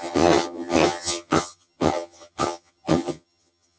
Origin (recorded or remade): remade